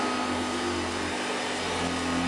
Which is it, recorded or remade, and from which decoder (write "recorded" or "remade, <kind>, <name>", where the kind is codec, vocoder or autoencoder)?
recorded